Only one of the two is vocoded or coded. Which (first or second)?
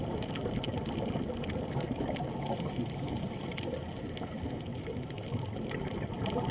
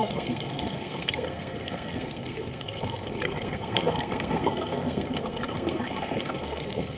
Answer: second